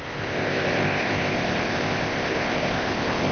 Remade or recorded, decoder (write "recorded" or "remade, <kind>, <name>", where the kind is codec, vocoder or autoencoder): remade, codec, ZipCodec